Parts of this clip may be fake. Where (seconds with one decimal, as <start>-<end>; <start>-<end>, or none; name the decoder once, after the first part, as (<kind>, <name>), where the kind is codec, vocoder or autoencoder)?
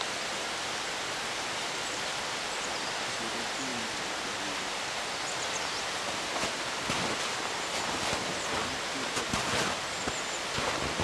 none